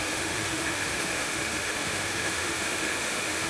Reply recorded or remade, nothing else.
remade